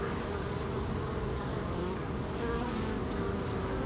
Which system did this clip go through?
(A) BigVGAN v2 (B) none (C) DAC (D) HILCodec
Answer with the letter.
C